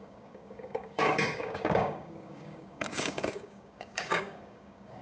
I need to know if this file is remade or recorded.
remade